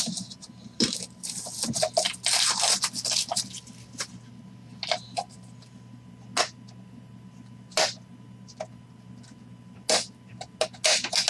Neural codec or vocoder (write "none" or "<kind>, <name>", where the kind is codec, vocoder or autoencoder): none